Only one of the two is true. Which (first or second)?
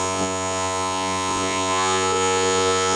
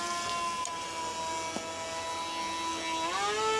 second